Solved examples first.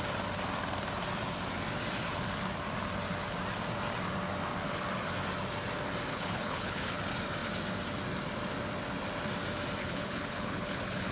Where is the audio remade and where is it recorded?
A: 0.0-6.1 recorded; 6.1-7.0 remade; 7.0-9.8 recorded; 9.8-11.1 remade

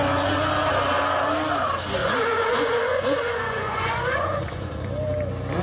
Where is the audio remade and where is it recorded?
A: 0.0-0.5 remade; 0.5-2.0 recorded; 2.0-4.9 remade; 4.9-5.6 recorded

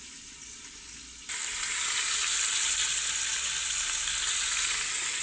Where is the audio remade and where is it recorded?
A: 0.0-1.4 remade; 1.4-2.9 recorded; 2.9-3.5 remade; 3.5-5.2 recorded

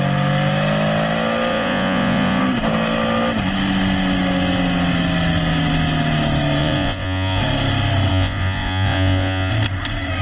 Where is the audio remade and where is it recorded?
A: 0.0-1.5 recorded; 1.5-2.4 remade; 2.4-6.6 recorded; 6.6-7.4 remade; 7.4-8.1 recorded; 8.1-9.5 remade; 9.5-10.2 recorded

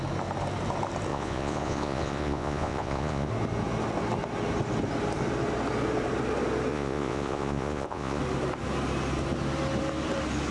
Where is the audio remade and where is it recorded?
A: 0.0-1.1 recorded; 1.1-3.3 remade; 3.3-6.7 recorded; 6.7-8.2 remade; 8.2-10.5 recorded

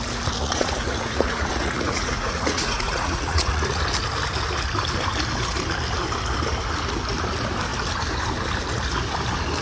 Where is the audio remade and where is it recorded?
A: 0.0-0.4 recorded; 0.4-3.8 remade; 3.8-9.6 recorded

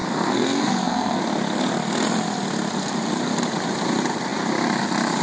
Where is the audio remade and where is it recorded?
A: 0.0-1.2 remade; 1.2-5.2 recorded